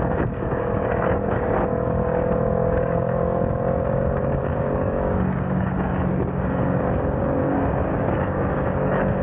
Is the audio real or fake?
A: fake